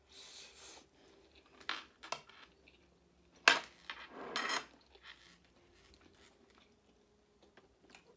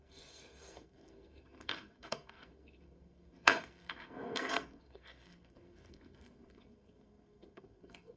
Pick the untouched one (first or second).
first